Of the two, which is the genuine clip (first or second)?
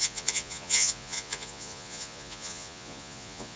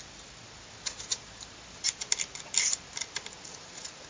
second